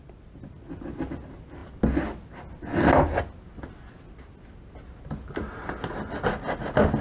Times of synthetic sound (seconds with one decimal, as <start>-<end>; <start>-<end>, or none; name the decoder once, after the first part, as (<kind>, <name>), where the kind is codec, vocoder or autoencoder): none